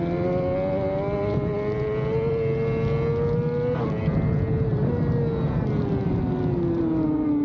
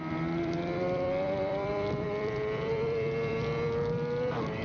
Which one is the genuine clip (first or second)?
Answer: first